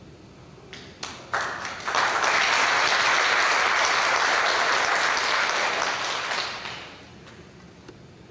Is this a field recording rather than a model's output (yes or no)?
yes